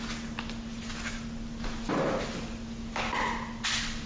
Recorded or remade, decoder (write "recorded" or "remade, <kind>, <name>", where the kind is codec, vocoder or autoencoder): recorded